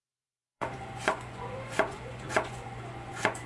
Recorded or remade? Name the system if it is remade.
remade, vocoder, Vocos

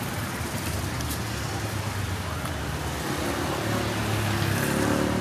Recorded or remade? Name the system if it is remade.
recorded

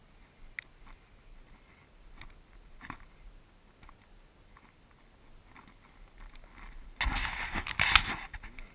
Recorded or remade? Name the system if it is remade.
recorded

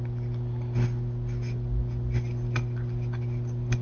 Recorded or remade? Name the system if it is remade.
recorded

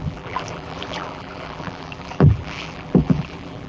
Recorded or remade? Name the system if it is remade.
remade, vocoder, BigVGAN v2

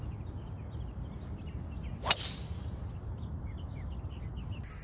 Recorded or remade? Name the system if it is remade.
recorded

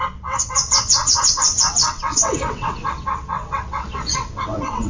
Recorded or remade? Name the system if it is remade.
remade, vocoder, WaveNeXt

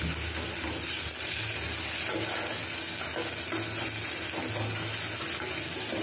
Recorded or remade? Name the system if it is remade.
recorded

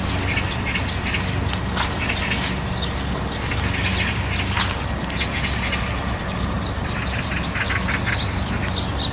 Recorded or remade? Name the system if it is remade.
recorded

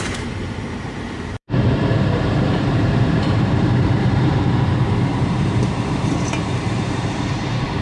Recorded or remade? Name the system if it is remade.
remade, vocoder, BigVGAN v2